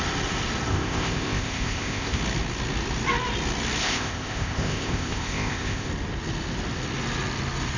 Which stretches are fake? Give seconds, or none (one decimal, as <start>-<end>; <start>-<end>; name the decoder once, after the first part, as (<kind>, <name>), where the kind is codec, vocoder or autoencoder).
0.7-2.2 (codec, ZipCodec); 3.8-5.9